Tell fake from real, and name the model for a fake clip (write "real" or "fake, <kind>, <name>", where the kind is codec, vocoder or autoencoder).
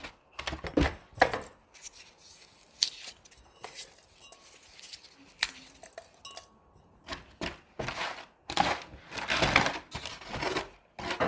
real